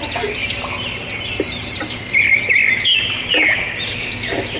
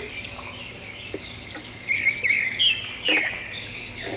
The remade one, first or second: second